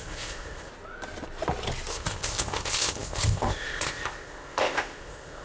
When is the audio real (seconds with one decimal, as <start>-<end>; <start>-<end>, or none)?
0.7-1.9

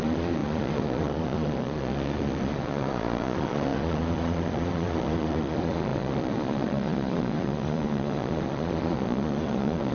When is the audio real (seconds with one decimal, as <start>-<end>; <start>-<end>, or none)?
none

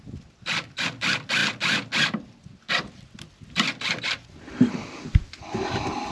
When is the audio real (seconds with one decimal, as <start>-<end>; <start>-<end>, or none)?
0.0-6.1

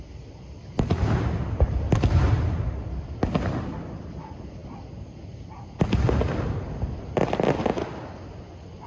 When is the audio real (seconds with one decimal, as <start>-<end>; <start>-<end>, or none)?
0.0-8.9

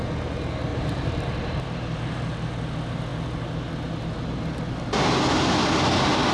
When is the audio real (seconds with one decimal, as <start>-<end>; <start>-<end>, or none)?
0.0-0.7; 2.5-6.3

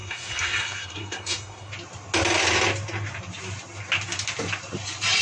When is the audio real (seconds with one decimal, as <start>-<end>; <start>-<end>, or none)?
1.7-5.2

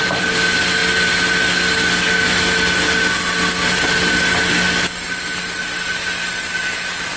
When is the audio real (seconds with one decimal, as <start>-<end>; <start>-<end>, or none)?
0.0-7.2